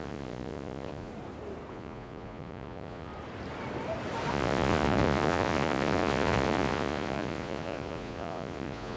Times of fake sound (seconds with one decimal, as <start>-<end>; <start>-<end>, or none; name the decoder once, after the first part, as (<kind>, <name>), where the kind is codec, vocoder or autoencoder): 0.0-1.1 (vocoder, Vocos); 1.7-3.1; 4.3-9.0